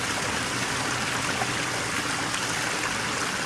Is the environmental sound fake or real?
real